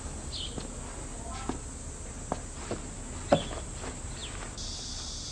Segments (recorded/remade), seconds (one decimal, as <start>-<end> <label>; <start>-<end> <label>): 0.0-5.3 recorded